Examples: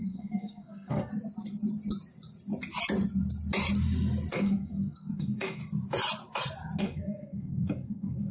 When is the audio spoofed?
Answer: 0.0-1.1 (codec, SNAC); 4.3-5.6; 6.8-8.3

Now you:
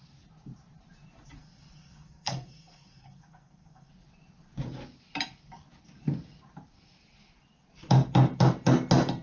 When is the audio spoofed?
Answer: 1.4-3.9 (codec, SNAC)